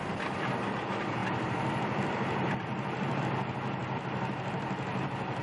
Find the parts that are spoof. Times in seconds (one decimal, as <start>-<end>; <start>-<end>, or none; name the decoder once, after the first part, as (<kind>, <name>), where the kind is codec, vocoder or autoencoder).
1.2-3.2 (vocoder, BigVGAN v2); 3.8-5.4